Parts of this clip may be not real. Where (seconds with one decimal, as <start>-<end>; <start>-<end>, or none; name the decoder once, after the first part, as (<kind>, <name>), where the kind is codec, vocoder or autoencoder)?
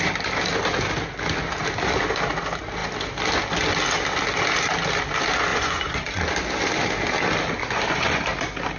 5.5-6.2 (vocoder, Vocos); 7.6-8.2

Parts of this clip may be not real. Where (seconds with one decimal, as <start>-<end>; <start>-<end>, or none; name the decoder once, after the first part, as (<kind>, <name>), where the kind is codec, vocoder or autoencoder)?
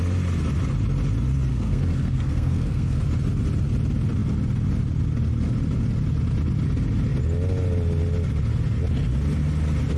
1.5-3.0 (codec, SNAC)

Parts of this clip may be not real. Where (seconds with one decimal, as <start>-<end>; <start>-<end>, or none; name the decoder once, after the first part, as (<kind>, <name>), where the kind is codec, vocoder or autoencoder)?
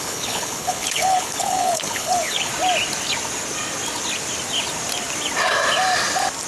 0.0-2.5 (codec, HILCodec)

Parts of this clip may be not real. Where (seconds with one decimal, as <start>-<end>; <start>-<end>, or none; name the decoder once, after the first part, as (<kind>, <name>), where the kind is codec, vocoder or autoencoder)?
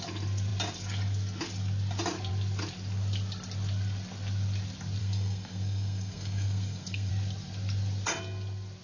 5.0-7.1 (codec, SNAC)